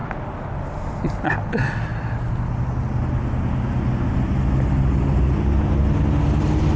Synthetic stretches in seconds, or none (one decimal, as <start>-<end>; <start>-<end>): none